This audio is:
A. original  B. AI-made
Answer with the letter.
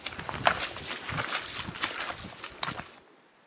A